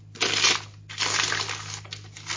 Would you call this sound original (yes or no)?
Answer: yes